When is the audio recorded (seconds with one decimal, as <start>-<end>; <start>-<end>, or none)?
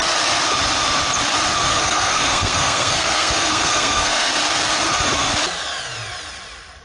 0.0-1.7; 4.3-6.8